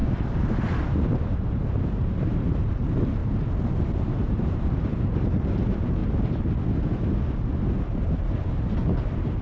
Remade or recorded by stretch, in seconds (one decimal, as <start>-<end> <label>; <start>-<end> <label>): 0.0-3.2 remade; 3.2-3.7 recorded; 3.7-6.0 remade; 6.0-7.8 recorded; 7.8-9.4 remade

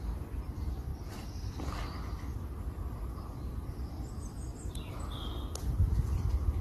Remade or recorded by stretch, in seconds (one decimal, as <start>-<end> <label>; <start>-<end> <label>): 0.0-0.9 recorded; 0.9-1.5 remade; 1.5-2.3 recorded; 2.3-4.9 remade; 4.9-6.6 recorded

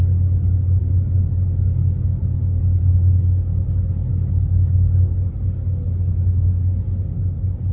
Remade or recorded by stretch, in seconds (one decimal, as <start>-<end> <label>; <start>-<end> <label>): 0.0-7.7 recorded

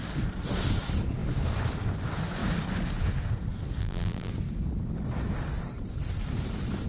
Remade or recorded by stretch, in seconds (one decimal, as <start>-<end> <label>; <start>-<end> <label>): 0.0-3.8 recorded; 3.8-4.3 remade; 4.3-6.9 recorded

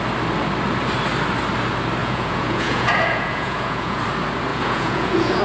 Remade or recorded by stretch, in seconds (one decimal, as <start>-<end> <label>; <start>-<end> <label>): 0.0-2.0 recorded; 2.0-4.0 remade; 4.0-4.5 recorded; 4.5-5.4 remade